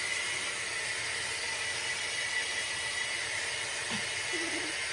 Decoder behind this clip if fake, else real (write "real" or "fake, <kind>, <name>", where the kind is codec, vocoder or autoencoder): real